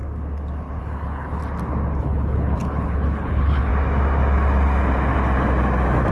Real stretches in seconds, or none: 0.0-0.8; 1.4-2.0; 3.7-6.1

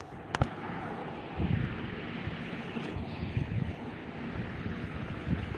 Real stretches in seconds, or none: 1.0-2.4; 4.0-4.5

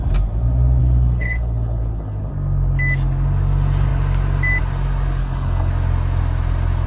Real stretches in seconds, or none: 0.0-0.8; 2.3-5.2; 5.7-6.9